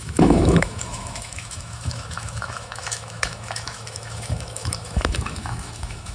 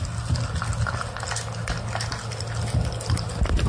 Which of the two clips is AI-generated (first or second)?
first